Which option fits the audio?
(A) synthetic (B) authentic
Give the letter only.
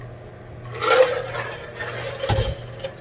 B